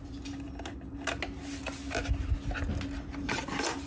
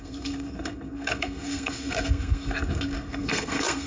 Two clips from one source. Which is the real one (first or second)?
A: first